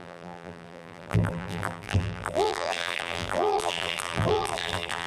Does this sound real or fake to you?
fake